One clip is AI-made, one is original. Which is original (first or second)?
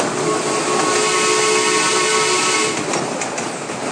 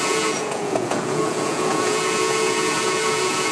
first